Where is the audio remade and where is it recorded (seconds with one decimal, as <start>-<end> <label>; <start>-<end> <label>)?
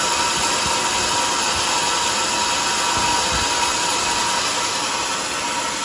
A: 0.0-3.7 recorded; 3.7-5.3 remade; 5.3-5.8 recorded